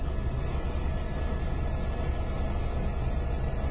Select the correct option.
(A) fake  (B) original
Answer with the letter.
B